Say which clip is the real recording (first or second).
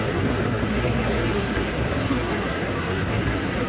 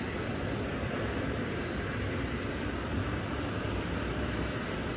second